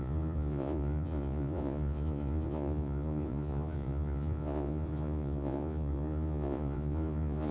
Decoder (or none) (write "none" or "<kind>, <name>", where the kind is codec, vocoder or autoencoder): vocoder, Vocos